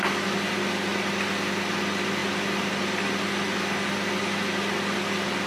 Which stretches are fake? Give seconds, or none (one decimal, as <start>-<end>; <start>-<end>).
none